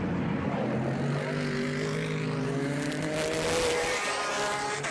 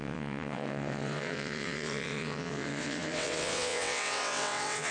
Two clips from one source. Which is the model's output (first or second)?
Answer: second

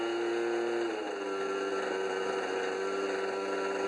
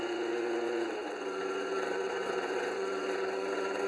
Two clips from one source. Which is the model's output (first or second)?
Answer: second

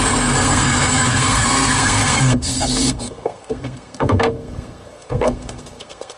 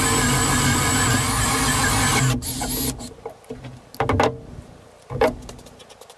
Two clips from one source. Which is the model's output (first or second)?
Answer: first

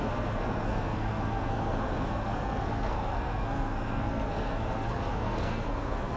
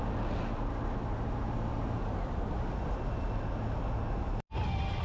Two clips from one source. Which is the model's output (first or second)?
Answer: first